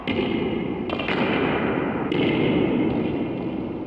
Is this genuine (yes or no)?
yes